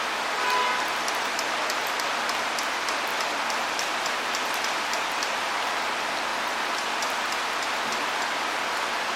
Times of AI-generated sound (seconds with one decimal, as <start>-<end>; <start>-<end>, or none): none